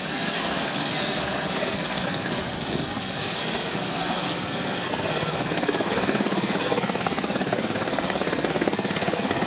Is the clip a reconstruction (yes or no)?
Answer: yes